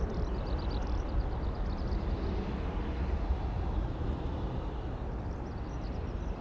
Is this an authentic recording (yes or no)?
yes